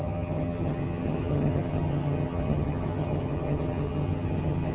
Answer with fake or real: fake